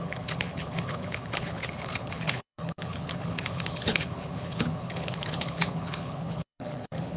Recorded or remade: remade